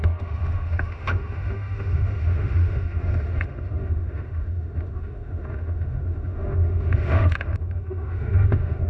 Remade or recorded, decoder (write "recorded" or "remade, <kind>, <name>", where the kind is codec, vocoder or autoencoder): remade, autoencoder, DAC-VAE